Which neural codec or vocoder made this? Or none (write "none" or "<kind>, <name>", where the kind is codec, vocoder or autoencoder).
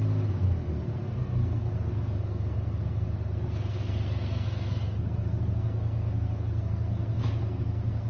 codec, SNAC